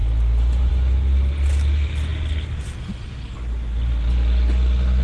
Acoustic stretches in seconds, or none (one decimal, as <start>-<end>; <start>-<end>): 0.0-5.0